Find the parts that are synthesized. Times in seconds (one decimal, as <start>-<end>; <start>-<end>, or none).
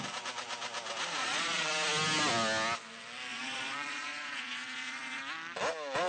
1.2-1.7; 3.3-5.2